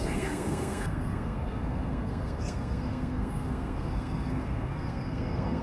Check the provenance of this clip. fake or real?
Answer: fake